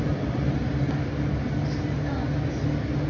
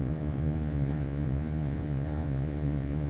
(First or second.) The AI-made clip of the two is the second